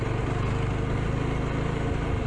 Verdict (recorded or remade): recorded